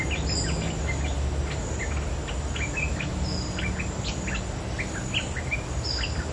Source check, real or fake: real